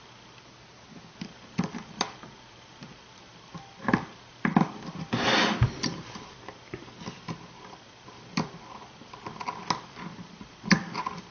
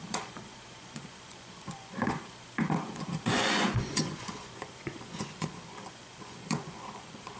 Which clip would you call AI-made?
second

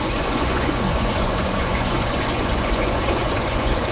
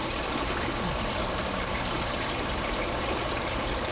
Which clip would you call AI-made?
first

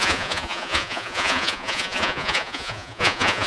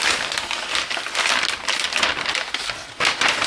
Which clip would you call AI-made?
first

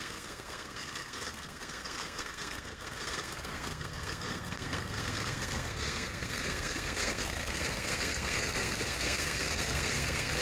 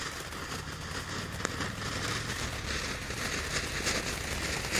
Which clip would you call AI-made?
first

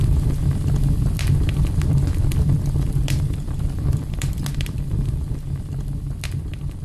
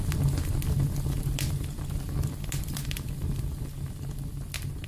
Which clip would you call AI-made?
first